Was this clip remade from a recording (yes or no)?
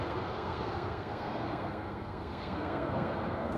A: yes